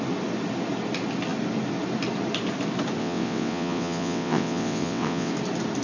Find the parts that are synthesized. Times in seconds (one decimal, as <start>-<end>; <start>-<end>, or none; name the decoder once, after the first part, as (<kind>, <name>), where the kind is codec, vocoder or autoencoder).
3.0-5.3 (vocoder, WaveNeXt)